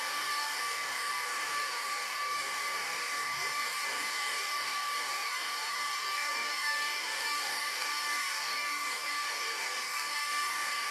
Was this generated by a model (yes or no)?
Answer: yes